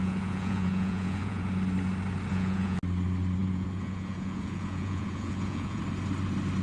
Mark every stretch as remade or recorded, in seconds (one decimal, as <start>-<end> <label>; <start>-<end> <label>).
0.0-1.4 remade; 1.4-2.3 recorded; 2.3-2.8 remade; 2.8-3.4 recorded; 3.4-5.8 remade; 5.8-6.6 recorded